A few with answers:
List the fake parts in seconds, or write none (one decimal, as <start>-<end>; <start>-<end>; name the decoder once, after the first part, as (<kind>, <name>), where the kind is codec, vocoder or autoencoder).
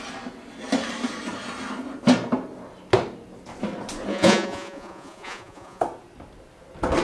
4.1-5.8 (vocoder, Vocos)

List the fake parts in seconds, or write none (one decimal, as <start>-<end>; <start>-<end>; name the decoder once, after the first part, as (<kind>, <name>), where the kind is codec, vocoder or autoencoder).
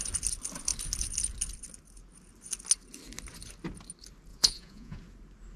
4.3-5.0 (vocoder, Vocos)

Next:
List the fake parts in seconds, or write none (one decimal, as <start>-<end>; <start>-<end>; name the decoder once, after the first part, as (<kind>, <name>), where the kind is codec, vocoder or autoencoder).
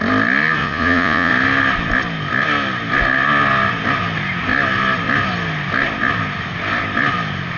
0.6-1.3 (vocoder, Vocos)